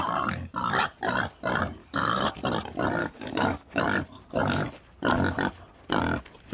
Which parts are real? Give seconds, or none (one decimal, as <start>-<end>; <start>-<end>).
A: 0.0-1.8; 2.4-3.0; 3.8-6.5